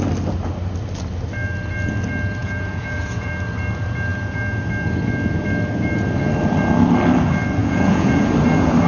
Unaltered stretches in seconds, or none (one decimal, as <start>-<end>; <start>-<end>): 0.0-2.4; 3.3-7.6; 8.3-8.9